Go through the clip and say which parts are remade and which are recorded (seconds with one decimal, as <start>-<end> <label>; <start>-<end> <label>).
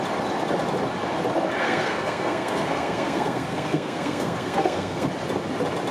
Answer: 0.0-1.6 recorded; 1.6-5.1 remade; 5.1-5.9 recorded